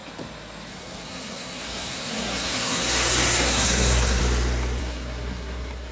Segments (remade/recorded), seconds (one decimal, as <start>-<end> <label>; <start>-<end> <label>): 0.0-0.7 recorded; 0.7-4.2 remade; 4.2-4.8 recorded; 4.8-5.9 remade